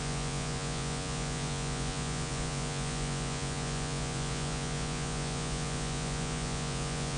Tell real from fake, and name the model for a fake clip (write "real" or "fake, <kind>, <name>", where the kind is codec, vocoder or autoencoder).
fake, vocoder, Vocos